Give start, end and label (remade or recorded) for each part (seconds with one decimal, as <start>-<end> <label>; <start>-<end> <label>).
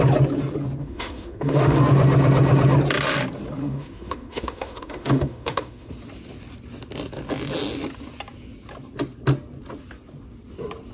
0.0-0.8 recorded; 0.8-1.8 remade; 1.8-3.6 recorded; 3.6-5.9 remade; 5.9-10.9 recorded